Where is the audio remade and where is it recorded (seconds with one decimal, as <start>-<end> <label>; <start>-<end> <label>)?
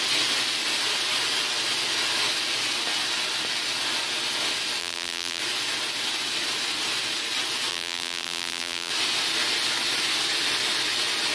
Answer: 0.0-4.8 recorded; 4.8-5.4 remade; 5.4-7.7 recorded; 7.7-8.9 remade; 8.9-11.3 recorded